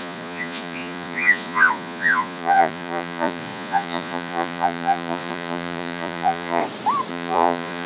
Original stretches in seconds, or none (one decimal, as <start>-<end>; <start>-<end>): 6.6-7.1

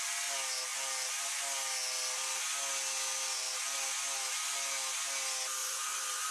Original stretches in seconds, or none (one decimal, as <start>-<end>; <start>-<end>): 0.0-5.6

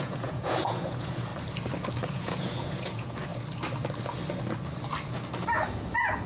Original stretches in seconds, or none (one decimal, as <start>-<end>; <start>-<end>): 1.3-2.1; 3.3-6.3

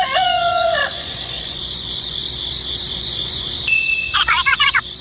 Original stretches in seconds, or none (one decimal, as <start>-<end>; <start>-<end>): 2.2-2.8